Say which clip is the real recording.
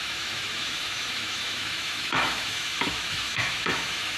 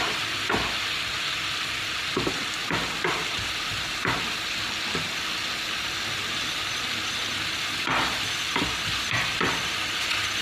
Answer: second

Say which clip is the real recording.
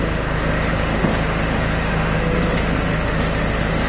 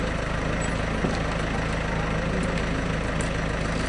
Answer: second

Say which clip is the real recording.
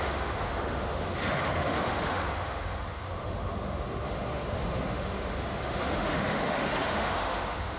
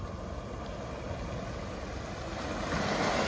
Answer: second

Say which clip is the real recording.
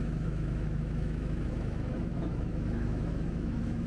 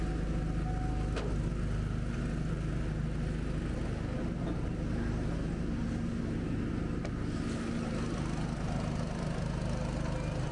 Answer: second